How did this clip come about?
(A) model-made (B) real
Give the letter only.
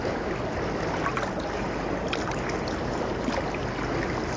B